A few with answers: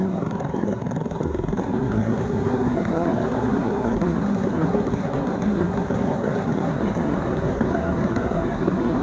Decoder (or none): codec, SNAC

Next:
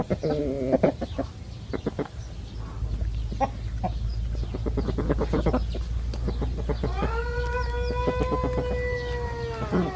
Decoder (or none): none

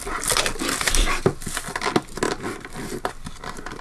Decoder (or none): none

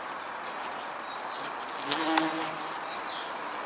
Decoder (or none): none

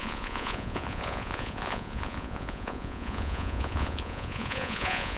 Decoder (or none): vocoder, Vocos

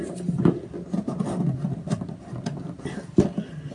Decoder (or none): none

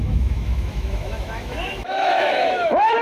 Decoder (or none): autoencoder, DAC-VAE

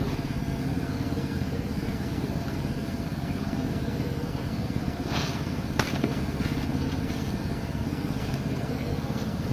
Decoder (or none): codec, SNAC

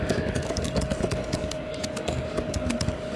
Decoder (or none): codec, DAC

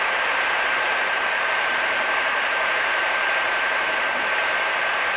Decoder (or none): vocoder, BigVGAN v2